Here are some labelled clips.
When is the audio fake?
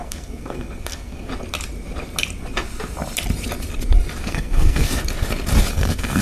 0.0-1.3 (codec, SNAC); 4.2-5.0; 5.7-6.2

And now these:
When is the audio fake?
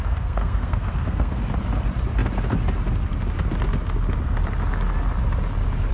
0.0-1.4 (codec, SNAC)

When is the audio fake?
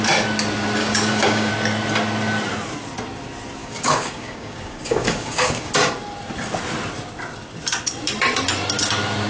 0.8-1.5 (codec, DAC); 3.6-5.7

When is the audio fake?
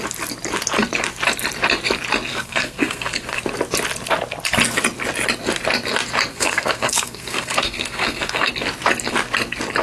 2.3-3.4 (codec, SNAC); 6.3-8.5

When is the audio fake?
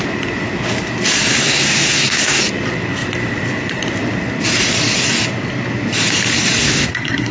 1.3-2.4 (codec, SNAC); 6.6-7.3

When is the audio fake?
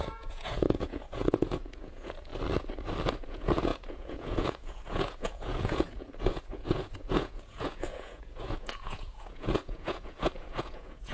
0.0-2.3 (vocoder, Vocos); 3.1-11.1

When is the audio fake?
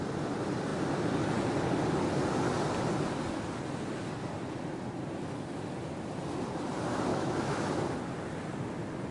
7.1-7.7 (autoencoder, DAC-VAE)